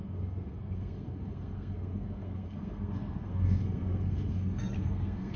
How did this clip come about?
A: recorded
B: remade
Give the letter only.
B